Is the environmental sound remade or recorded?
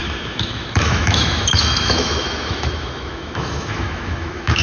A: remade